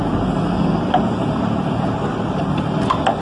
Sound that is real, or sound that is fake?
real